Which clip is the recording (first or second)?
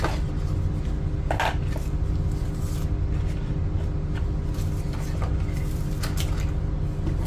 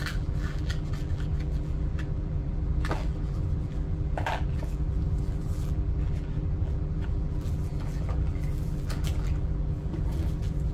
first